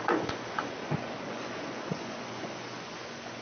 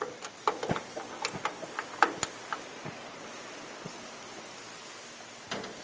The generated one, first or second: first